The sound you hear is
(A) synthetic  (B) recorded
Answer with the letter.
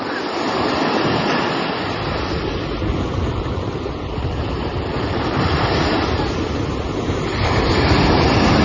B